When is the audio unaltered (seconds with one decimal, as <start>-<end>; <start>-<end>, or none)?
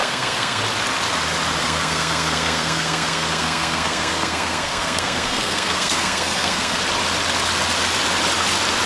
0.6-1.6; 6.8-8.9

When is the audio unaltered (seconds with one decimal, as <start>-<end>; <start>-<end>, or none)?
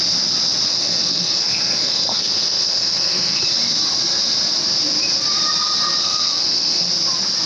0.0-0.7; 3.4-6.0; 6.9-7.5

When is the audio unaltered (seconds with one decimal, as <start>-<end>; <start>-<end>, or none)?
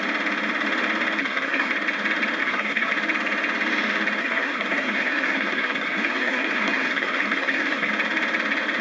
0.0-1.2; 1.7-2.4; 2.9-4.2; 7.9-8.8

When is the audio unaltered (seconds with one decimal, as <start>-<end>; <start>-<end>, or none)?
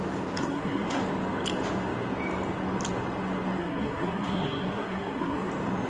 0.0-0.4; 1.0-3.6; 5.5-5.9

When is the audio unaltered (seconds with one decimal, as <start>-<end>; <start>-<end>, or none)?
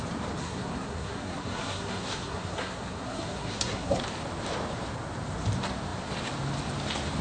0.0-0.4; 4.0-7.2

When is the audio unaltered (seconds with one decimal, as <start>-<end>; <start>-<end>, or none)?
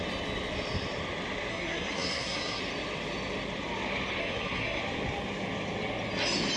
0.0-1.5; 2.6-4.2; 4.8-6.6